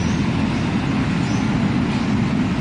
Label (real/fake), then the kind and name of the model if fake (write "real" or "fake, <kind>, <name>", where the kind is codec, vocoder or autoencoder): real